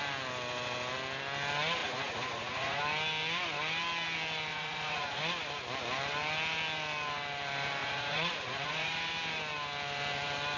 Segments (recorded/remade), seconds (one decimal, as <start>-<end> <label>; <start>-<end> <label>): 0.0-1.8 recorded; 1.8-2.8 remade; 2.8-4.5 recorded; 4.5-5.2 remade; 5.2-7.8 recorded; 7.8-9.0 remade; 9.0-10.6 recorded